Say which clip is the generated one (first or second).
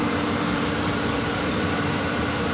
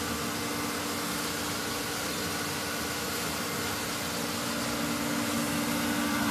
first